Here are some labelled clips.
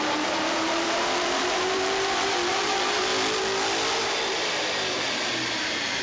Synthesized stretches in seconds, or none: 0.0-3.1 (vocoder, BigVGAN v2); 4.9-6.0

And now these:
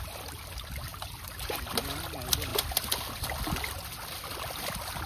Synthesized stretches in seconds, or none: 0.9-1.7 (vocoder, BigVGAN v2)

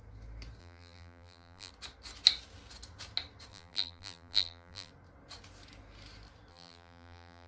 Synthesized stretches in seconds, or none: 0.6-1.7 (vocoder, BigVGAN v2); 3.5-4.9; 6.5-7.5

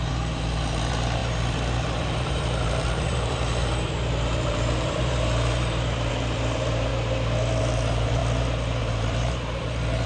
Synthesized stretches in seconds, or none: 0.0-6.9 (vocoder, BigVGAN v2); 7.6-8.2; 8.8-10.1

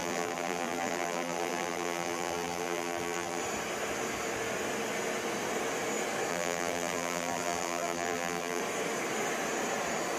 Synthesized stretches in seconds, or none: 0.0-3.4 (vocoder, BigVGAN v2); 6.3-8.6

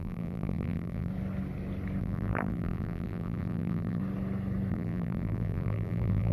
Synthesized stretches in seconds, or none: 0.0-1.1 (vocoder, BigVGAN v2); 2.0-4.0; 4.7-6.3

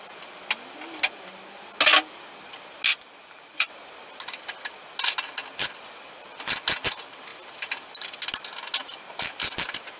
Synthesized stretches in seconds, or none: 2.9-3.7 (vocoder, BigVGAN v2)

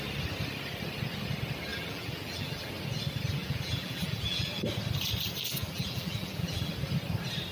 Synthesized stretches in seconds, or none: 1.7-2.7 (vocoder, BigVGAN v2); 3.4-4.6; 5.6-6.7